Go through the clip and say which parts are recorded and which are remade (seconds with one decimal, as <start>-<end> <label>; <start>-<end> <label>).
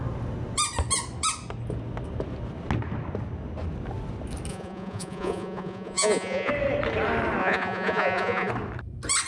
0.0-4.5 recorded; 4.5-6.5 remade; 6.5-7.4 recorded; 7.4-8.5 remade; 8.5-9.3 recorded